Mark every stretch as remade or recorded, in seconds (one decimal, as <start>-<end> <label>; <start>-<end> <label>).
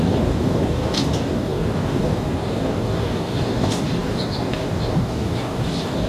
0.0-6.1 remade